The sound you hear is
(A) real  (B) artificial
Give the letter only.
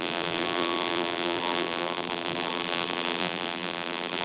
B